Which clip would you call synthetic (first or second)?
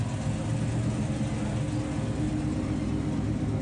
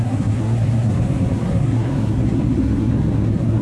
second